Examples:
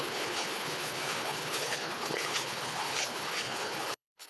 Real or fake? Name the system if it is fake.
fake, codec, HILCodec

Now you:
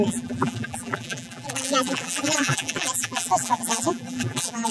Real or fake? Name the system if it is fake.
fake, vocoder, BigVGAN v2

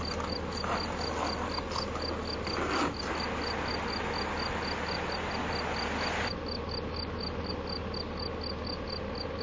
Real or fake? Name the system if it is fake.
real